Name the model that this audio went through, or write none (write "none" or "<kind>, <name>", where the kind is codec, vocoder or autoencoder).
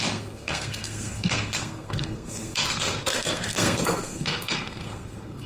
codec, SNAC